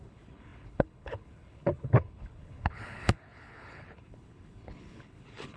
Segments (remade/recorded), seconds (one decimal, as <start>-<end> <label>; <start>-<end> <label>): 0.0-5.6 remade